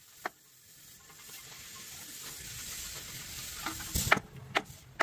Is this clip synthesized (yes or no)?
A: no